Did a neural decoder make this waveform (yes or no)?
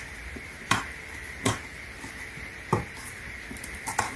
no